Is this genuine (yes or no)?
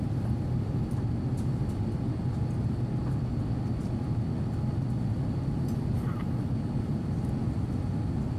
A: yes